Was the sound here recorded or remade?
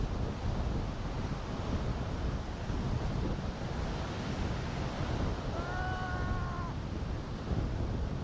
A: recorded